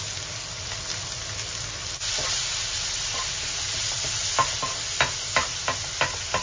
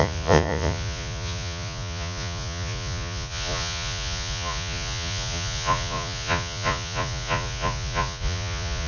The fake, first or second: second